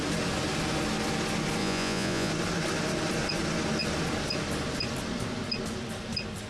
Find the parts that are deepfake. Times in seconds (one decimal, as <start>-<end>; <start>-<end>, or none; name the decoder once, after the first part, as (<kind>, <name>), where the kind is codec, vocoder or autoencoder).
1.6-2.3 (vocoder, Vocos)